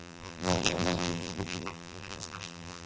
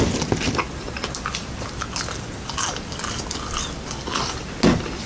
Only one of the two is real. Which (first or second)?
second